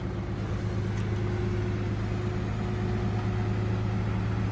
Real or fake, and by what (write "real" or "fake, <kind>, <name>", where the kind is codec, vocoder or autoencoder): real